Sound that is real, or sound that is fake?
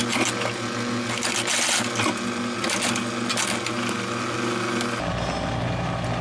real